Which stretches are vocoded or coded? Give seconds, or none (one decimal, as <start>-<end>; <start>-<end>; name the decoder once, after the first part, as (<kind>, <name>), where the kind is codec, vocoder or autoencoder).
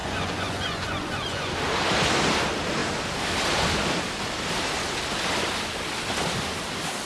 0.0-1.5 (vocoder, Vocos)